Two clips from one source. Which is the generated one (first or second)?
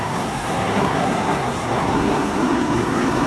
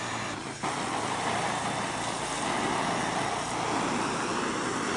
first